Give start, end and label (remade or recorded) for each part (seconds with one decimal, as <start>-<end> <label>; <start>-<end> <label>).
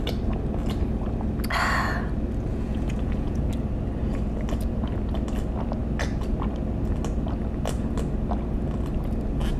0.0-2.5 recorded; 2.5-3.4 remade; 3.4-9.6 recorded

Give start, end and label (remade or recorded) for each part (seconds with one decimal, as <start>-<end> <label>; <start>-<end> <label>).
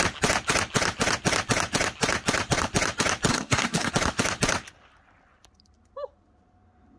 0.0-3.3 recorded; 3.3-3.9 remade; 3.9-7.0 recorded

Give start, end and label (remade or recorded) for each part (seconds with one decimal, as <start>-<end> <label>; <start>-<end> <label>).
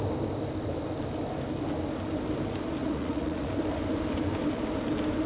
0.0-2.8 recorded; 2.8-3.5 remade; 3.5-5.3 recorded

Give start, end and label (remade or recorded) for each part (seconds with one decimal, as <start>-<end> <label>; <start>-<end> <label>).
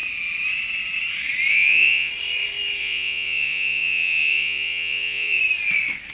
0.0-1.5 recorded; 1.5-2.1 remade; 2.1-2.8 recorded; 2.8-5.4 remade; 5.4-6.1 recorded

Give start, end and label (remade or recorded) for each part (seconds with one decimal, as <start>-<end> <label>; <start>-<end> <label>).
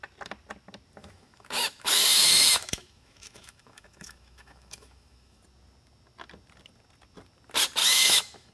0.0-1.0 recorded; 1.0-5.4 remade; 5.4-7.8 recorded; 7.8-8.5 remade